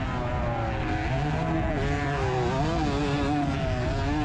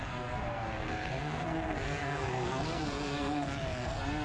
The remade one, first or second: second